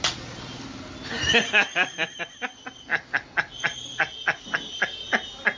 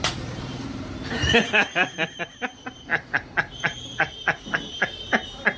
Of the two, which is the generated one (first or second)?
second